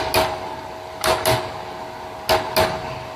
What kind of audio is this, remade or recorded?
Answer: recorded